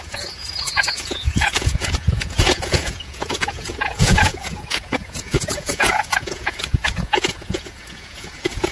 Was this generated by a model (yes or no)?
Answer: yes